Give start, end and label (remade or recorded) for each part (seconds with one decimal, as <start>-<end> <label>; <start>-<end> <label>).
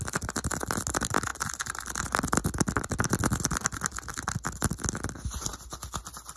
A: 0.0-6.4 recorded